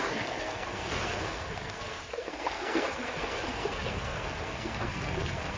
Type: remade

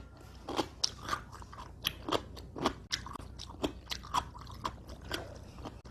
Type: recorded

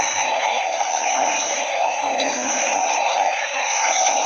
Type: remade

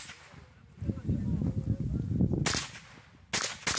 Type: recorded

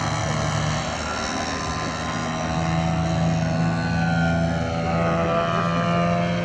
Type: recorded